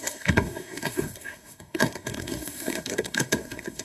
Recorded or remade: remade